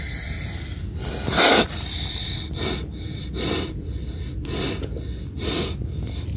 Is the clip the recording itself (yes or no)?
yes